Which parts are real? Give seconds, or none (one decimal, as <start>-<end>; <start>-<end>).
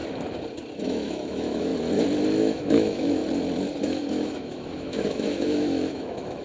0.0-0.8; 1.7-2.4; 3.2-3.8